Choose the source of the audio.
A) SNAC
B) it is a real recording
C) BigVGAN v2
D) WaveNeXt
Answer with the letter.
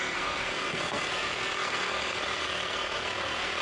A